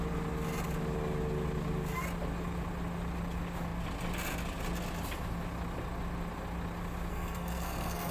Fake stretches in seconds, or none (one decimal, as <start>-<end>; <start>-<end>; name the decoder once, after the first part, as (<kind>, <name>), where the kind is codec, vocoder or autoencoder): 7.1-8.1 (codec, SNAC)

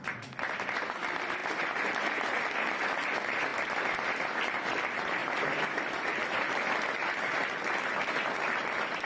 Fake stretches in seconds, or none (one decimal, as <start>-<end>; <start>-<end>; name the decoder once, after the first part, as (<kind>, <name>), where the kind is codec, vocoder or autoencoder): none

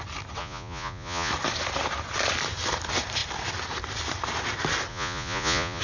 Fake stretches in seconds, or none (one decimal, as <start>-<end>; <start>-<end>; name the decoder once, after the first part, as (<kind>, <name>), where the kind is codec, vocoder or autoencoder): 0.4-1.3 (vocoder, Vocos); 4.9-5.8